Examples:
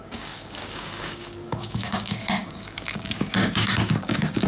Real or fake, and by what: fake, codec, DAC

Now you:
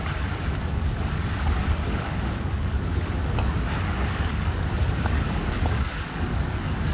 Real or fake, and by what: fake, codec, DAC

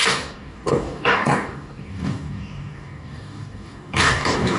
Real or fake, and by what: fake, codec, DAC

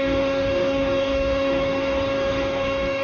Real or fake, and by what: fake, codec, DAC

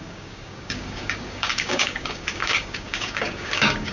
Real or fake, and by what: fake, codec, DAC